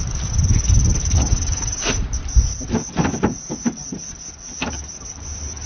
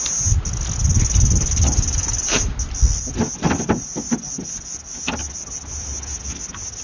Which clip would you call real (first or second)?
second